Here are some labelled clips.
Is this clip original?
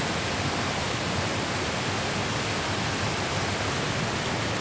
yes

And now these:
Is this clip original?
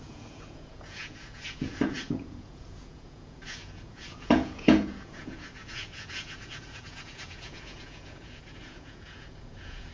no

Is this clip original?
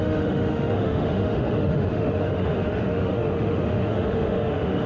no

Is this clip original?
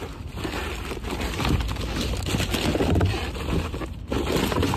yes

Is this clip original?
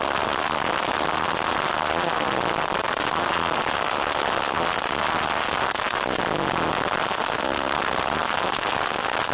yes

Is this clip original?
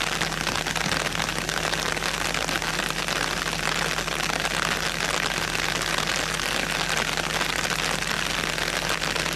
yes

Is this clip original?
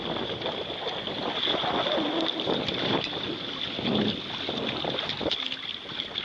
yes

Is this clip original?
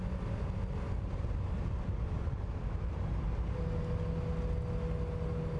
yes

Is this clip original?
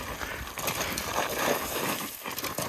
yes